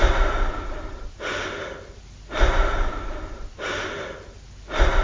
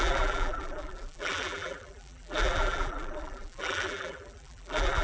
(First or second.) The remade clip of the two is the second